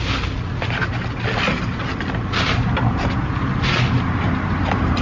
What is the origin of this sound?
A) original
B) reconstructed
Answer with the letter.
A